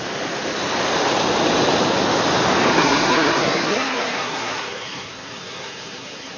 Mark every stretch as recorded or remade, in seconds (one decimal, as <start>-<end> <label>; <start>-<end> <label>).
0.0-2.7 recorded; 2.7-6.4 remade

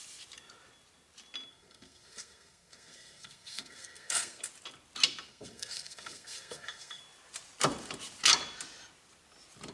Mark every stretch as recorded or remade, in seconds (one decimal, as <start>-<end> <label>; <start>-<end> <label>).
0.0-1.5 recorded; 1.5-4.4 remade; 4.4-5.3 recorded; 5.3-7.0 remade; 7.0-9.7 recorded

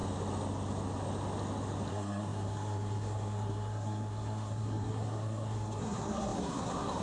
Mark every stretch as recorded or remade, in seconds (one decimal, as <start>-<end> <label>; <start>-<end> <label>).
0.0-1.9 recorded; 1.9-7.0 remade

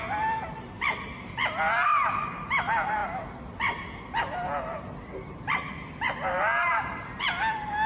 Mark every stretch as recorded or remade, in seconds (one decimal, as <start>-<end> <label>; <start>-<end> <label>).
0.0-7.9 recorded

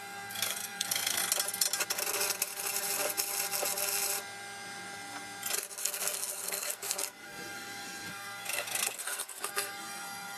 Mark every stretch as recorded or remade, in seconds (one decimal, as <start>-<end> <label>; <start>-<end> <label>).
0.0-1.2 remade; 1.2-5.8 recorded; 5.8-10.4 remade

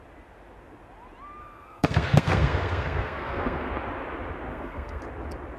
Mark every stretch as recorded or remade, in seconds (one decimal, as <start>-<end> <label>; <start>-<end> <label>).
0.0-1.4 recorded; 1.4-3.7 remade; 3.7-4.5 recorded; 4.5-5.0 remade; 5.0-5.6 recorded

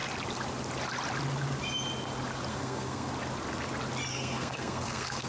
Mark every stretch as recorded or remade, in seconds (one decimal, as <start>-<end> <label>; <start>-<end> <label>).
0.0-2.5 recorded; 2.5-3.1 remade; 3.1-4.1 recorded; 4.1-5.3 remade